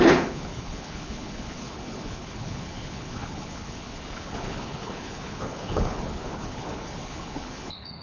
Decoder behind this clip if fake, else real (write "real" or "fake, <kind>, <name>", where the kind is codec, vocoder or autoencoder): fake, codec, HILCodec